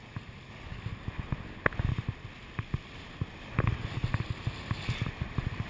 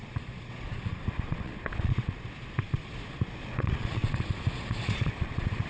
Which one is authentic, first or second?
first